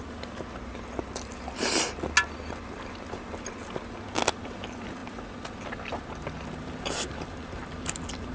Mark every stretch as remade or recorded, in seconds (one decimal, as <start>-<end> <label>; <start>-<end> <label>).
0.0-8.3 recorded